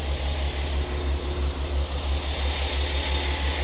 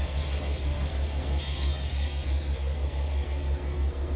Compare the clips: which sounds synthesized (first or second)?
second